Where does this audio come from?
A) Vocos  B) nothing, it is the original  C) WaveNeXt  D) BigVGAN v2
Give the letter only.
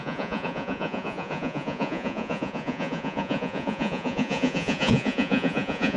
A